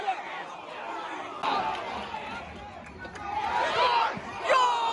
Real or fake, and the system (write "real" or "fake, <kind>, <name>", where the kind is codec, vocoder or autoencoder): real